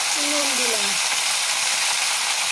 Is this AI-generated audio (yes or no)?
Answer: yes